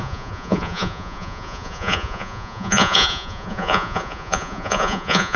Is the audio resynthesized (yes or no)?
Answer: yes